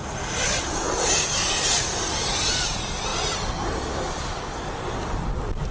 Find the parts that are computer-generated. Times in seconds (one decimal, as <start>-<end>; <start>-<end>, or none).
none